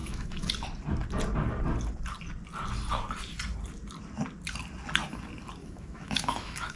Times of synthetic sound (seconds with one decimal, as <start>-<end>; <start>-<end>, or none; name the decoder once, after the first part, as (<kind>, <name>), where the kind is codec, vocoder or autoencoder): 0.0-0.5 (autoencoder, DAC-VAE); 5.6-6.8